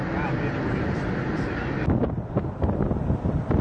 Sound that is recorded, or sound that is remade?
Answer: recorded